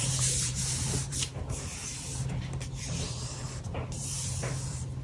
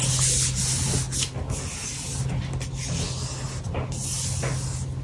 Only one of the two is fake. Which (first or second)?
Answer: first